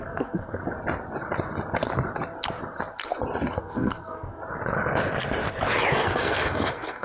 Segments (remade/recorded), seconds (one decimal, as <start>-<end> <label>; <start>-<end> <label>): 0.0-0.6 remade; 0.6-3.6 recorded; 3.6-4.4 remade; 4.4-5.9 recorded; 5.9-7.0 remade